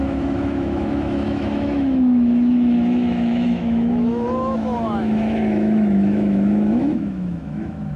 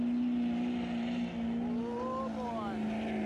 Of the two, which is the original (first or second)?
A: second